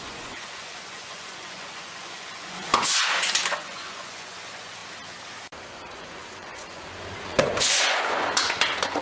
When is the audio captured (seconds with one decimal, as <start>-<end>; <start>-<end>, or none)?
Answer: 4.8-5.7

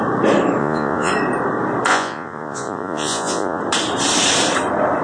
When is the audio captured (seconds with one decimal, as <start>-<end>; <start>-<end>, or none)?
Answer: 0.0-0.6; 1.1-1.9; 3.6-5.0

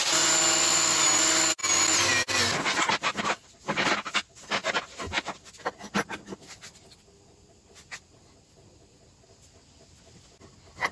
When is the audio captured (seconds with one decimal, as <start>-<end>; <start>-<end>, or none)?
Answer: 0.0-10.9

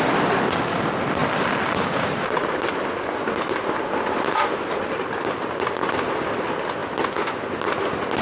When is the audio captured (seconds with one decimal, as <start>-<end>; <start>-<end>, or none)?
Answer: 0.0-8.2

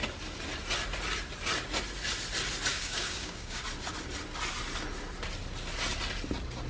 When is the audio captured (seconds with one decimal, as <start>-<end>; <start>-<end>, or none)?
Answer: 0.0-2.7; 3.6-6.7

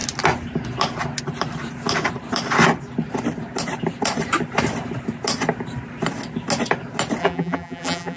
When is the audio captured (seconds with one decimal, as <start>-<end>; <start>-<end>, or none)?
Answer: 0.0-7.2

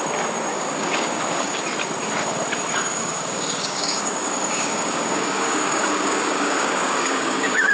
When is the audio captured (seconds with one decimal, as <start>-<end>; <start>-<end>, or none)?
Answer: 0.0-0.5; 1.6-2.9